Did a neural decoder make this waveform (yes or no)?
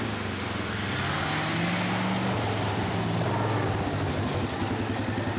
no